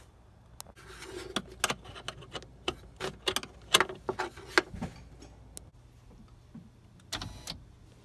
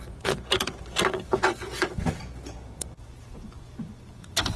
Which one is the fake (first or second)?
second